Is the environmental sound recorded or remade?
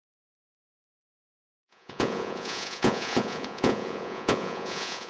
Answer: remade